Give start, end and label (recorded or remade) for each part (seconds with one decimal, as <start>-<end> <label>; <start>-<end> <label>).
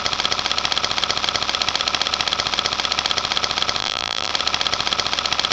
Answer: 0.0-3.8 recorded; 3.8-4.3 remade; 4.3-5.5 recorded